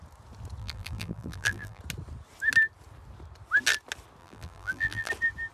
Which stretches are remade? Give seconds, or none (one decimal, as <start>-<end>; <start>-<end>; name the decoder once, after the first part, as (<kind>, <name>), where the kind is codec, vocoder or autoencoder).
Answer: 0.6-1.8 (vocoder, BigVGAN v2); 4.2-5.1